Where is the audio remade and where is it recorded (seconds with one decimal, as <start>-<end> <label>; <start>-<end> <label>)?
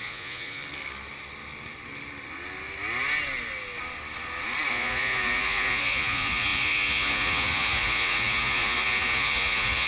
0.0-0.6 remade; 0.6-4.7 recorded; 4.7-9.9 remade